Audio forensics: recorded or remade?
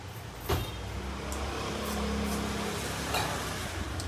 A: recorded